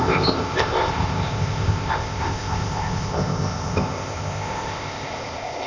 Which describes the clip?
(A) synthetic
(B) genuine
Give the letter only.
A